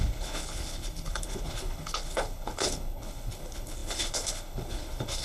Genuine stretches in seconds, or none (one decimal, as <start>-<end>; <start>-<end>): none